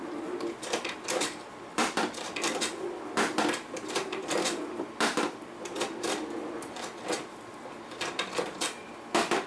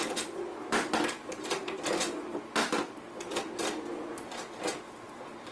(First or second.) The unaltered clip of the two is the second